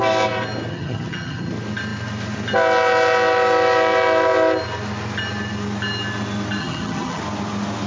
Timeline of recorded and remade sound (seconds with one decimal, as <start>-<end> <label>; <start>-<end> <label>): 0.0-0.7 recorded; 0.7-1.5 remade; 1.5-6.6 recorded; 6.6-7.2 remade; 7.2-7.9 recorded